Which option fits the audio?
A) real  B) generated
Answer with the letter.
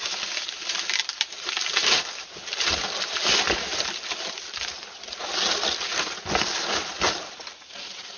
A